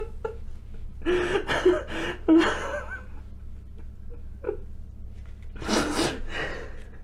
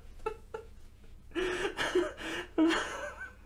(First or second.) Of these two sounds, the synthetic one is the second